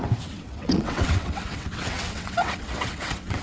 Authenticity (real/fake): fake